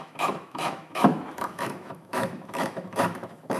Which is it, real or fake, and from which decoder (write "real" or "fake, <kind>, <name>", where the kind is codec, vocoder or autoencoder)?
fake, autoencoder, DAC-VAE